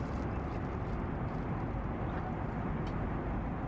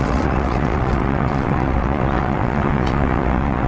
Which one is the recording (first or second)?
first